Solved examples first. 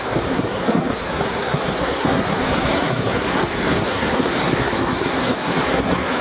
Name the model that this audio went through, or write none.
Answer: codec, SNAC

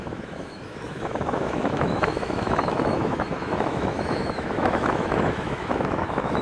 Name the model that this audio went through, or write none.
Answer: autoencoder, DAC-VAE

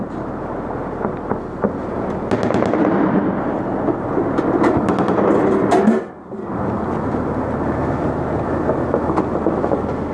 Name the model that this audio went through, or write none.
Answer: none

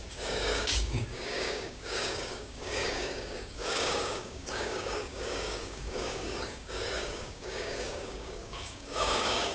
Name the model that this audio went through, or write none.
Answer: codec, DAC